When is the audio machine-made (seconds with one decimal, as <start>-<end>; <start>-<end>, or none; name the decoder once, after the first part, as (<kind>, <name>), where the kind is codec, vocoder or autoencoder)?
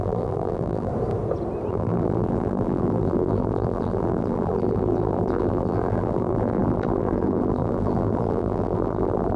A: 0.0-0.9 (vocoder, BigVGAN v2); 1.7-9.4